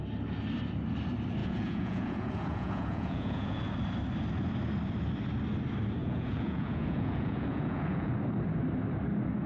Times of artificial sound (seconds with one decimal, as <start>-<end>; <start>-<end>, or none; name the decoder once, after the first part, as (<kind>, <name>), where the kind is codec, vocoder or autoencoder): 1.4-3.7 (vocoder, Vocos); 6.0-8.1